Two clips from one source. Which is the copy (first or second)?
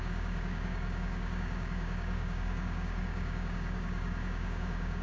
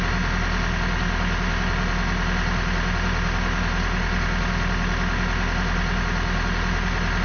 first